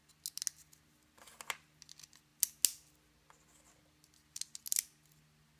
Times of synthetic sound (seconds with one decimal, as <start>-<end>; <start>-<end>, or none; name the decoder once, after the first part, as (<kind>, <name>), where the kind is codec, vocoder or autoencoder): none